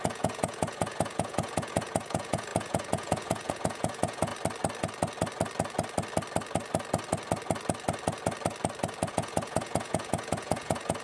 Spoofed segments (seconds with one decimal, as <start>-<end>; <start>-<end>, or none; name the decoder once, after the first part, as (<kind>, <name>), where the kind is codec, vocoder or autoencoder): 0.0-4.3 (vocoder, Vocos); 9.1-11.0